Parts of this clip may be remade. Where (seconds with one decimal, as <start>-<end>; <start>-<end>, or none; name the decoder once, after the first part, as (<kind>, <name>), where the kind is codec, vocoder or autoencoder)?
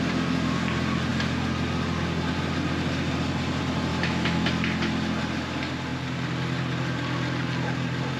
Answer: 3.9-4.5 (autoencoder, DAC-VAE)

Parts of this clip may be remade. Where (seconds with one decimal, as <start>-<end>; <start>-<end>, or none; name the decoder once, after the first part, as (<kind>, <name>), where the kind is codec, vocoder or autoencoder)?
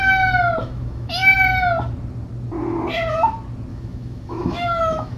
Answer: 0.6-1.6 (autoencoder, DAC-VAE); 3.7-5.2